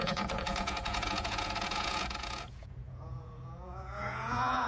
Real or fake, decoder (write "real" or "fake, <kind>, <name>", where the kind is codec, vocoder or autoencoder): fake, vocoder, Vocos